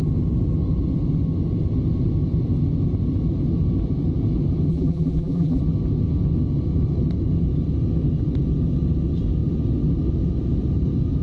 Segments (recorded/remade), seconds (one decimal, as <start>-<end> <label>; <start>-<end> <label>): 0.0-4.7 recorded; 4.7-5.6 remade; 5.6-11.2 recorded

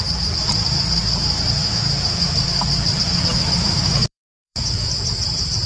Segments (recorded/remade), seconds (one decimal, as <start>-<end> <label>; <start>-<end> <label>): 0.0-1.6 recorded; 1.6-2.6 remade; 2.6-3.3 recorded; 3.3-4.9 remade; 4.9-5.7 recorded

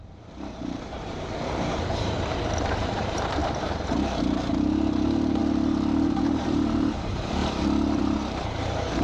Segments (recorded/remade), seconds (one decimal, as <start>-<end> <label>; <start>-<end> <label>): 0.0-5.4 remade; 5.4-6.2 recorded; 6.2-7.4 remade; 7.4-8.0 recorded; 8.0-9.0 remade

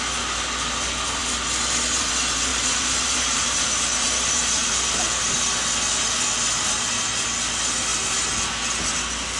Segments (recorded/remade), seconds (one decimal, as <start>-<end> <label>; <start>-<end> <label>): 0.0-2.5 recorded; 2.5-5.3 remade; 5.3-9.4 recorded

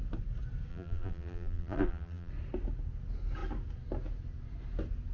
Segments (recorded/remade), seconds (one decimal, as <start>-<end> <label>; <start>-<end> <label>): 0.0-0.7 recorded; 0.7-2.3 remade; 2.3-5.1 recorded